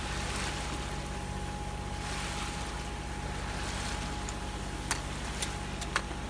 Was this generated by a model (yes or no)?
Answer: no